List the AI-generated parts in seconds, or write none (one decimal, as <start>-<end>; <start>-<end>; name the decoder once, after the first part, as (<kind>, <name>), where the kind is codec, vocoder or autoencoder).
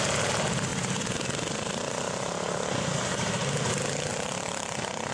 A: 0.7-2.6 (vocoder, BigVGAN v2); 4.1-5.1